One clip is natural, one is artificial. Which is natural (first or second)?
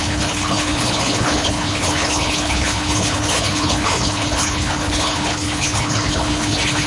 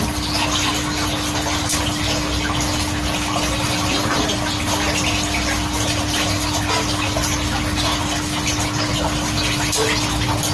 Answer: second